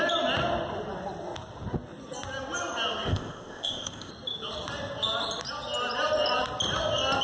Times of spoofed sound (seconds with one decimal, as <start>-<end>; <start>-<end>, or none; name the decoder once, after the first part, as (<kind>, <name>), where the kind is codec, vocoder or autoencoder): 3.1-4.1 (codec, ZipCodec)